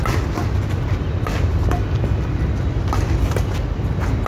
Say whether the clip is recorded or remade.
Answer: recorded